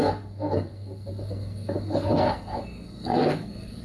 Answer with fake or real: fake